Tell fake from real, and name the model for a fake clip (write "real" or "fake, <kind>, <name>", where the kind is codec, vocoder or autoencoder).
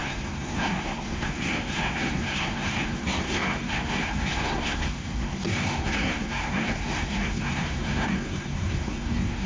fake, codec, SNAC